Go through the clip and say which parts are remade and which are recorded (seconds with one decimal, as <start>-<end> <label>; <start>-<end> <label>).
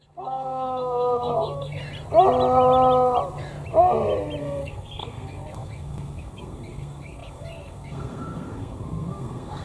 0.0-1.8 remade; 1.8-4.4 recorded; 4.4-9.6 remade